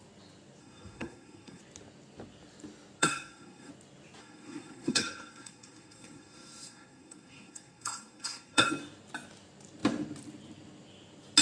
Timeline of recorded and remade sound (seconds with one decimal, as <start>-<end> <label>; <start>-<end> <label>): 0.0-0.6 recorded; 0.6-1.6 remade; 1.6-3.0 recorded; 3.0-3.7 remade; 3.7-4.2 recorded; 4.2-8.7 remade; 8.7-11.4 recorded

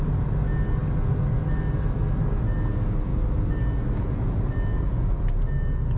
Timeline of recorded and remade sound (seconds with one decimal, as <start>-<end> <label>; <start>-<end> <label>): 0.0-6.0 recorded

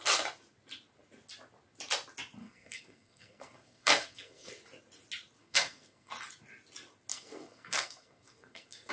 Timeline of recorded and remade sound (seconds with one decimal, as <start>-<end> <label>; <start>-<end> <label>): 0.0-2.4 recorded; 2.4-4.5 remade; 4.5-5.4 recorded; 5.4-6.1 remade; 6.1-7.1 recorded; 7.1-8.9 remade

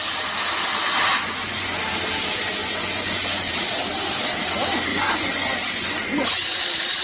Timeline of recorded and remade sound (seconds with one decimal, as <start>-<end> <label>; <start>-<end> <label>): 0.0-1.1 recorded; 1.1-1.8 remade; 1.8-2.6 recorded; 2.6-3.5 remade; 3.5-4.9 recorded; 4.9-6.6 remade; 6.6-7.0 recorded

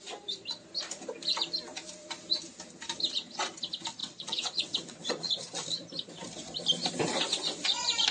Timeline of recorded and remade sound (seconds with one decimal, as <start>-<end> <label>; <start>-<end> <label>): 0.0-4.0 recorded; 4.0-5.3 remade; 5.3-8.1 recorded

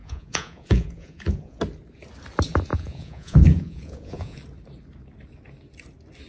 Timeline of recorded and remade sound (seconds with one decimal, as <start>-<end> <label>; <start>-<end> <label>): 0.0-1.6 remade; 1.6-2.7 recorded; 2.7-4.4 remade; 4.4-6.3 recorded

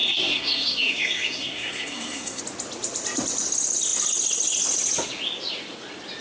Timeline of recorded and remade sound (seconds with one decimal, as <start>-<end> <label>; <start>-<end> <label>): 0.0-2.4 remade; 2.4-6.2 recorded